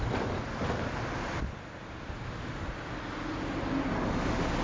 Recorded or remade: recorded